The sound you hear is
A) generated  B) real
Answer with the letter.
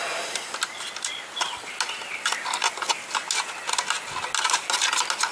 B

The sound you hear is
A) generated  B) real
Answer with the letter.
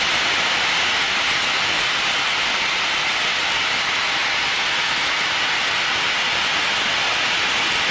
B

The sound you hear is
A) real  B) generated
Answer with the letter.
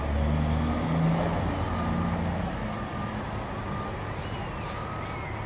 A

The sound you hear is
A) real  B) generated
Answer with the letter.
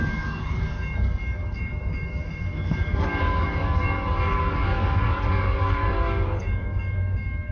B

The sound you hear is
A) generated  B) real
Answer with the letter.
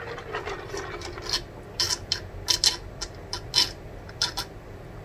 B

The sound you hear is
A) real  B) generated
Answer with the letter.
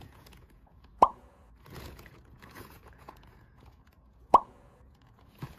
B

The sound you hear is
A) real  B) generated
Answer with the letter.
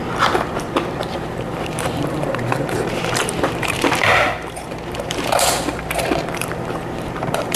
B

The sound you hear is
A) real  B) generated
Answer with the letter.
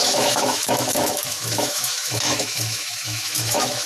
B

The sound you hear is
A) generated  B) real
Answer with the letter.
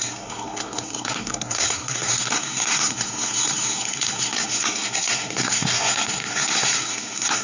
A